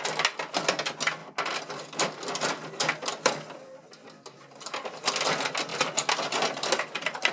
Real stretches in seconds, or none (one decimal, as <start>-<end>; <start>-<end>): 0.0-7.3